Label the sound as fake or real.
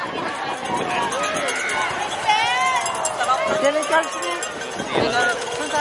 real